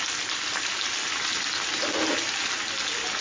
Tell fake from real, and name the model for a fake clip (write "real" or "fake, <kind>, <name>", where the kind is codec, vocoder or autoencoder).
real